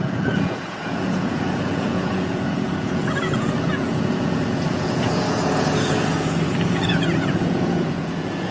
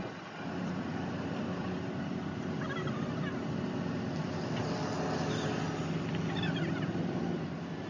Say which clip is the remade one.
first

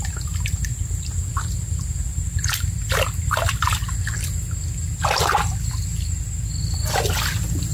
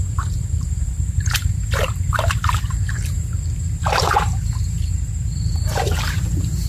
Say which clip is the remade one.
second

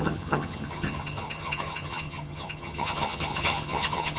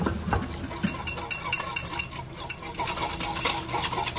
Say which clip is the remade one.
first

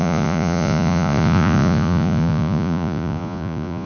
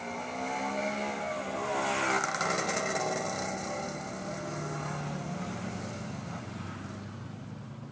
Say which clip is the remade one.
first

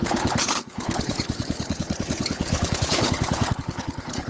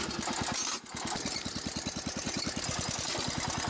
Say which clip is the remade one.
first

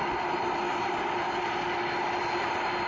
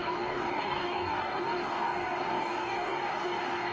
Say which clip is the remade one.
second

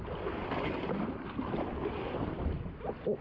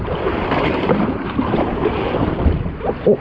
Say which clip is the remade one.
second